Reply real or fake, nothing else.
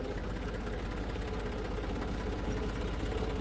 real